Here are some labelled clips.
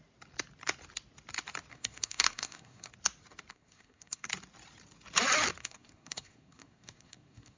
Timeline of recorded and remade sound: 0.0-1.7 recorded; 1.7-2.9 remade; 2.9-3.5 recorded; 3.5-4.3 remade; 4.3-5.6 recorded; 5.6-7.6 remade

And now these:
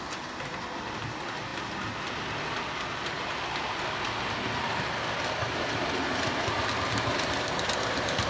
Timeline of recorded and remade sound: 0.0-8.3 recorded

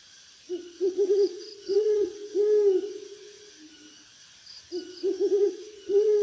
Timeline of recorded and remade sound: 0.0-2.2 remade; 2.2-5.5 recorded; 5.5-6.2 remade

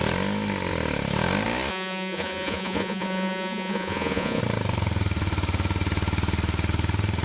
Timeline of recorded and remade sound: 0.0-1.7 recorded; 1.7-4.4 remade; 4.4-7.2 recorded

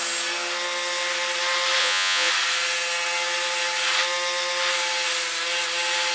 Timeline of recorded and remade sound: 0.0-1.8 recorded; 1.8-2.3 remade; 2.3-6.1 recorded

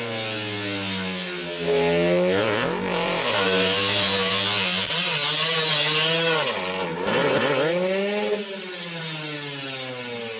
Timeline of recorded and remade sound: 0.0-2.9 recorded; 2.9-4.3 remade; 4.3-10.4 recorded

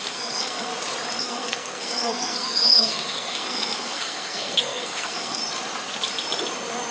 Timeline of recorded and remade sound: 0.0-0.7 remade; 0.7-1.2 recorded; 1.2-5.4 remade; 5.4-6.9 recorded

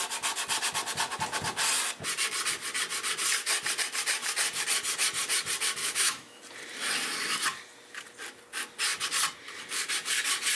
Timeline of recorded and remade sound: 0.0-5.8 recorded; 5.8-6.4 remade; 6.4-10.6 recorded